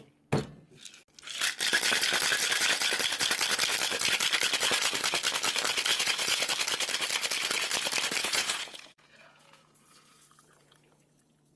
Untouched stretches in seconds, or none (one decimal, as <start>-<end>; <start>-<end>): 0.0-5.9; 6.5-8.2